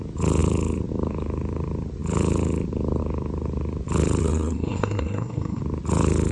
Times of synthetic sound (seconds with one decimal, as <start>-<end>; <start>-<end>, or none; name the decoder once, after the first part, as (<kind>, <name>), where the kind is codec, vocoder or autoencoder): 4.2-5.6 (codec, SNAC)